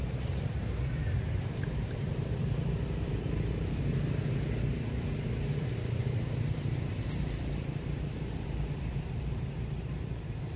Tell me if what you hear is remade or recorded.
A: remade